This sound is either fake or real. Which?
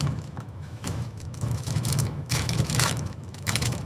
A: fake